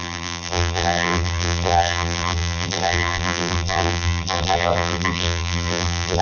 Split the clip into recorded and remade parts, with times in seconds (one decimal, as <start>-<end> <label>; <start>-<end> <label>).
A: 0.0-6.2 remade